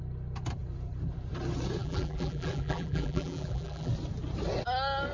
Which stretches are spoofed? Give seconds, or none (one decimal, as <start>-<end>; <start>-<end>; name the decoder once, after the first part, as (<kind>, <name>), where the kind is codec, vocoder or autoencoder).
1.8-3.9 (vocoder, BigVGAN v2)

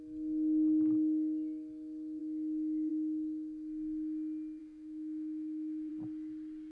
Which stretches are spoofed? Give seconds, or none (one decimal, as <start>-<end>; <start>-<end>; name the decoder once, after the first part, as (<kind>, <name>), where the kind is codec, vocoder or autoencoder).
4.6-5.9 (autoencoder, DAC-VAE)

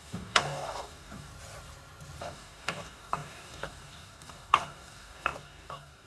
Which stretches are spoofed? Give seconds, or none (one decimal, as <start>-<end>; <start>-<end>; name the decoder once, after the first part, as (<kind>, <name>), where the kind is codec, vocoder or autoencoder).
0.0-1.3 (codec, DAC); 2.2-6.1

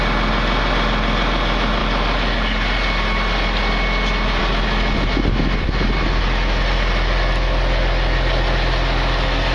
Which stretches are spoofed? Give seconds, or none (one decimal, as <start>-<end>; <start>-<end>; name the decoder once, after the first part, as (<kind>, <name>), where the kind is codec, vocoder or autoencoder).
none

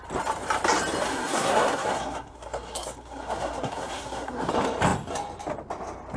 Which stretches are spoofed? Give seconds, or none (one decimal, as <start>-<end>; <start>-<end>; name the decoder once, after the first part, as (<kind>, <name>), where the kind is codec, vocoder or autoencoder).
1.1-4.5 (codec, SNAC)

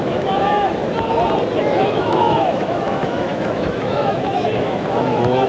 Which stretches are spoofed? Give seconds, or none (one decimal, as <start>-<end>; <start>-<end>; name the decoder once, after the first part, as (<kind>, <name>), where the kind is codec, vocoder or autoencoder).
0.0-0.8 (autoencoder, DAC-VAE); 1.6-5.5